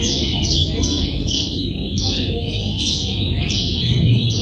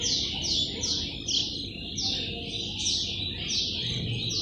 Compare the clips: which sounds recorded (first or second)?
second